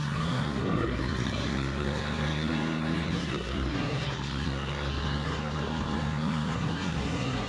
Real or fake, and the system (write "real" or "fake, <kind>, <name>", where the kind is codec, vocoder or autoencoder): fake, codec, SNAC